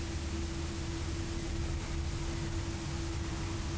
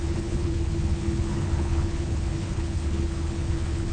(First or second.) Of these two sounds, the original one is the first